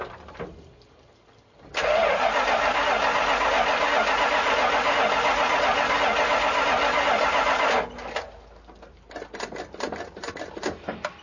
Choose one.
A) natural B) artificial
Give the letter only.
A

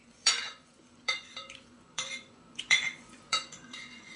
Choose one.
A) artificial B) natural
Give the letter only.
A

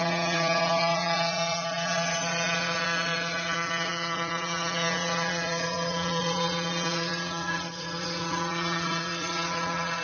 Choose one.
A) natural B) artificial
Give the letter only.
B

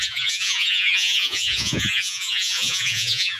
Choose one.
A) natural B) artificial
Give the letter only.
B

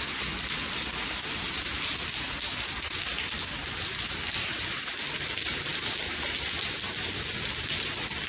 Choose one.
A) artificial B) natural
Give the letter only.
B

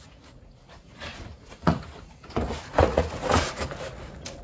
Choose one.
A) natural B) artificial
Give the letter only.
B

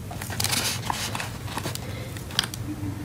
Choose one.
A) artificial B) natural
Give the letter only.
B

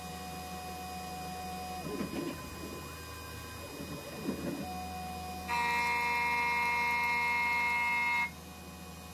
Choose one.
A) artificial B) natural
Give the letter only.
B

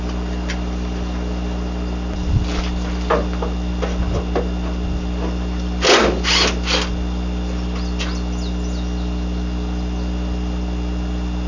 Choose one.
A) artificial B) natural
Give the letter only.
B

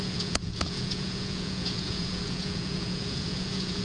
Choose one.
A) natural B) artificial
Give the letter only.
B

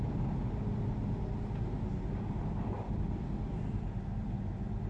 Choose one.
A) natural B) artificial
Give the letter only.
A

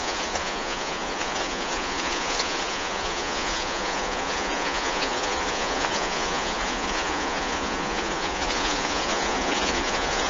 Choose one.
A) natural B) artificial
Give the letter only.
B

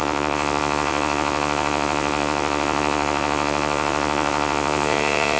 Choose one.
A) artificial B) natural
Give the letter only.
A